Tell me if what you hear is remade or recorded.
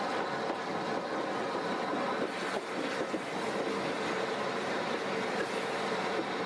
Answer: recorded